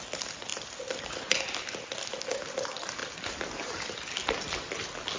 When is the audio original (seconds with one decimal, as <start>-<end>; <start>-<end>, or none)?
0.0-5.2

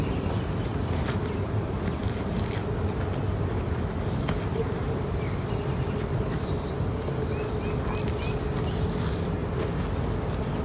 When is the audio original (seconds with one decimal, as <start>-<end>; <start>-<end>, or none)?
0.0-6.1; 6.8-10.6

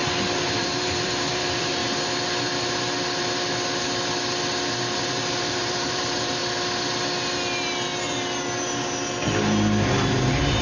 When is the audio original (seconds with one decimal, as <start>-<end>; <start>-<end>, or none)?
0.0-0.6; 1.8-5.0; 6.4-9.9